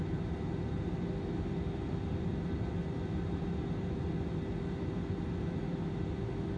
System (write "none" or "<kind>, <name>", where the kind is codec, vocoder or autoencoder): none